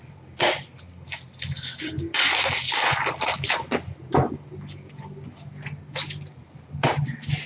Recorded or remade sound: recorded